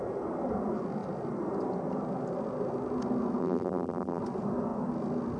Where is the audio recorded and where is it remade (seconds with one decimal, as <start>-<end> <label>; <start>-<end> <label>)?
0.0-3.4 recorded; 3.4-4.2 remade; 4.2-5.4 recorded